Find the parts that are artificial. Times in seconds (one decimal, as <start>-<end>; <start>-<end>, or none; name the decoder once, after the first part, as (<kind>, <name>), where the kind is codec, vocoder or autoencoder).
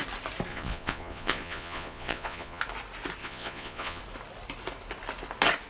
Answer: 0.5-2.6 (vocoder, Vocos); 3.2-4.0